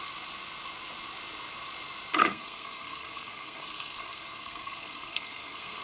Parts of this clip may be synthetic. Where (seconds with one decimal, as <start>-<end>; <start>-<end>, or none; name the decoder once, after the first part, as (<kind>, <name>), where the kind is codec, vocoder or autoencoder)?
2.2-5.8 (codec, SNAC)